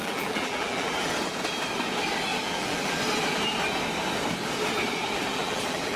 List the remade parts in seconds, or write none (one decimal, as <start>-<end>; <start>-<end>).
0.0-1.1; 2.3-3.0; 5.3-6.0